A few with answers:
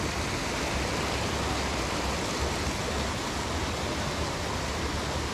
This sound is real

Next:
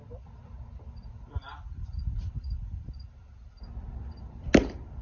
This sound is real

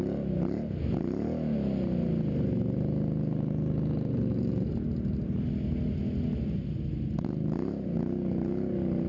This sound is real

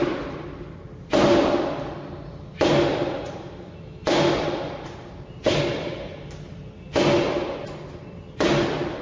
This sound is real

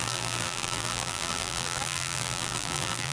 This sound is fake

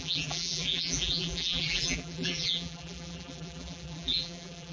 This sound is fake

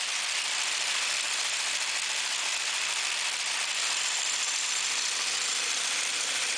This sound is real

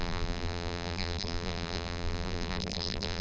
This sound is fake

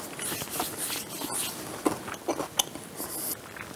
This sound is real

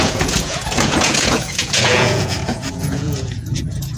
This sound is fake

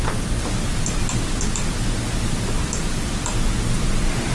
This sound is real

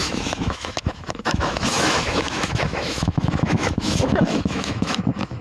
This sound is fake